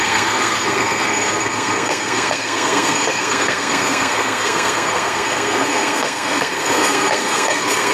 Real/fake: fake